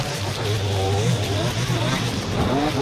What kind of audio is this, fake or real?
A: real